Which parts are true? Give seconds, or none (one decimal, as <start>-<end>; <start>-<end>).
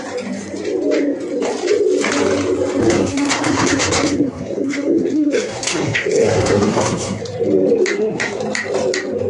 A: 0.0-2.8; 7.2-7.9; 8.4-9.3